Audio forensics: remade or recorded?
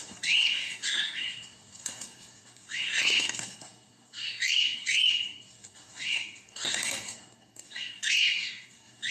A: remade